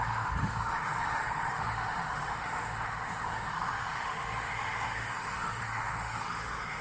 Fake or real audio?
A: fake